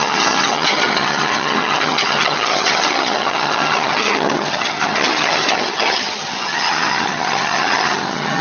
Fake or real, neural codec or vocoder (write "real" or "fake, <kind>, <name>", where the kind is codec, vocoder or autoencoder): fake, vocoder, HiFi-GAN